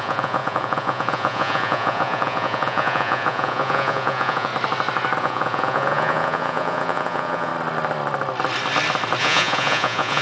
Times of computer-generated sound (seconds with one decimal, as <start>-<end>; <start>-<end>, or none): 0.0-4.5; 5.2-7.5; 9.2-10.2